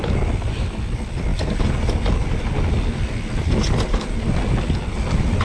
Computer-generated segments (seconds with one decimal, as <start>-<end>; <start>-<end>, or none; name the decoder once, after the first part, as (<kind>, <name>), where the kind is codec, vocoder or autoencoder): none